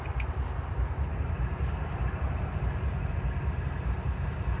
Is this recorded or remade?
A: recorded